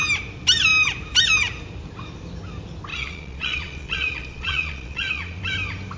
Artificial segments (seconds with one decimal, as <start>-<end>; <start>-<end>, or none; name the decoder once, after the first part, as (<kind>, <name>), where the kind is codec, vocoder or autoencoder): 2.9-5.4 (vocoder, Vocos)